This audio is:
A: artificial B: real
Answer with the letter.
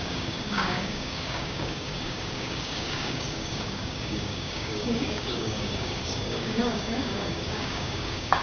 A